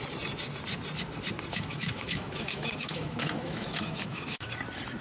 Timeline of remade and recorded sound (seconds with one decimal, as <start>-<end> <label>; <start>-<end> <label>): 0.0-1.5 recorded; 1.5-4.5 remade; 4.5-5.0 recorded